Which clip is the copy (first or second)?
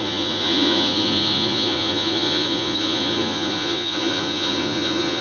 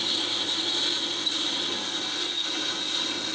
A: first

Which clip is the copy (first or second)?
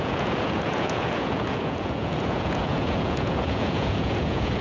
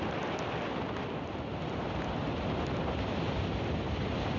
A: first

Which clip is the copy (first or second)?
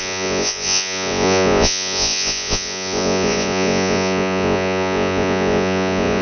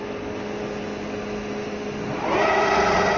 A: first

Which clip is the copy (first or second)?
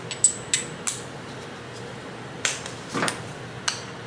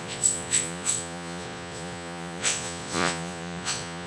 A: second